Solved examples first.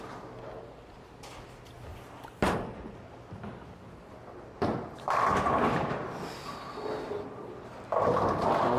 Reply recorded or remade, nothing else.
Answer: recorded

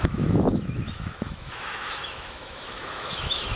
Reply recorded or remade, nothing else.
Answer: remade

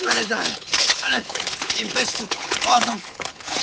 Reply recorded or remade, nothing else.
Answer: remade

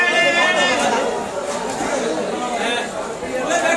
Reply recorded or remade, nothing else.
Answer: recorded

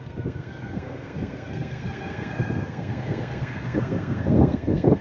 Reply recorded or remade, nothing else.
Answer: remade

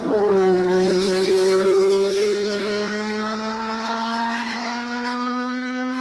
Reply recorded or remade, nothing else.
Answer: remade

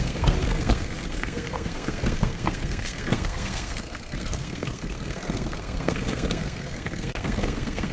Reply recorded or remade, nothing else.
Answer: remade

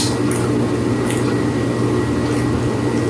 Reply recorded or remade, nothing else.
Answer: recorded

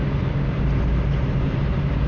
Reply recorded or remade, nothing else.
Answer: recorded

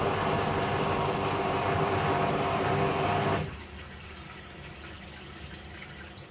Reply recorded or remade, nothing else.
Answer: recorded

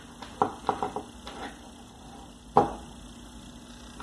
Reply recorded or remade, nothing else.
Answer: recorded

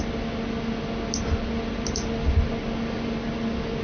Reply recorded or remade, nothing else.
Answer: recorded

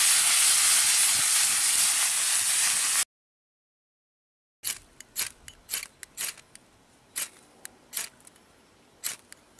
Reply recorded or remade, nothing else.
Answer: recorded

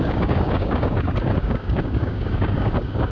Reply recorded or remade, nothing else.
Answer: remade